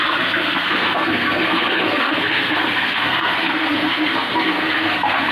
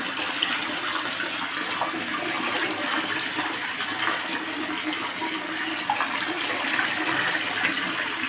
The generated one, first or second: first